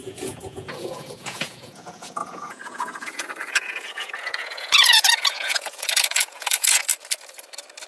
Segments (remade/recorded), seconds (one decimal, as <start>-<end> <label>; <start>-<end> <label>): 0.0-6.9 remade; 6.9-7.9 recorded